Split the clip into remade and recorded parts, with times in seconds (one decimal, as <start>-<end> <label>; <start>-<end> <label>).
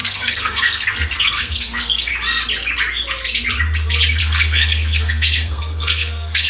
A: 0.0-2.1 remade; 2.1-4.2 recorded; 4.2-6.5 remade